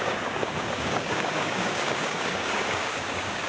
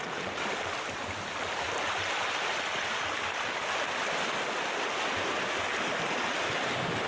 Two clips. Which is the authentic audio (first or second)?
second